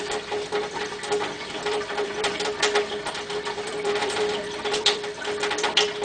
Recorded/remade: remade